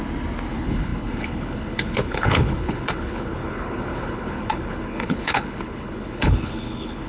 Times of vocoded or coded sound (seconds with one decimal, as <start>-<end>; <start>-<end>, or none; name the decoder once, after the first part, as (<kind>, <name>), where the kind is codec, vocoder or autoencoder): 0.5-7.1 (codec, HILCodec)